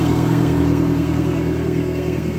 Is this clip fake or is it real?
fake